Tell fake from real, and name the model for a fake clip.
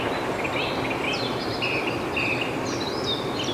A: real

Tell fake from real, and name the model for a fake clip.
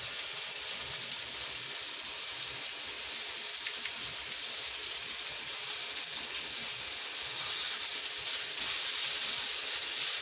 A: real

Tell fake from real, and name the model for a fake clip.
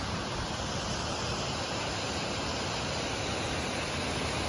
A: real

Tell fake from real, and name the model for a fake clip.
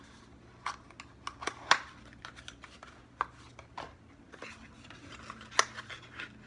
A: real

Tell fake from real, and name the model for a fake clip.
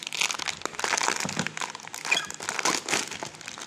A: real